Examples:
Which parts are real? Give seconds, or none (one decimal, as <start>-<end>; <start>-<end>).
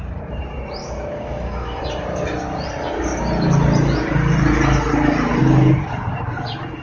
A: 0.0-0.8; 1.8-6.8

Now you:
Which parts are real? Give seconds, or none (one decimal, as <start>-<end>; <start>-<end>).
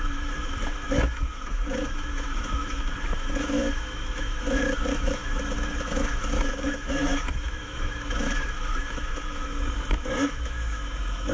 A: none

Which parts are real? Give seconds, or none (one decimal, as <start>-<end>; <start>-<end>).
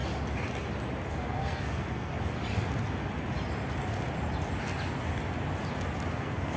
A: 0.0-1.1; 2.1-6.1